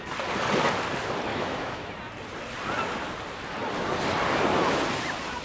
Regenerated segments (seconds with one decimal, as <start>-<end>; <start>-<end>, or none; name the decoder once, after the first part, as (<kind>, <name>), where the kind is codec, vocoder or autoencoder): 1.3-1.9 (autoencoder, DAC-VAE)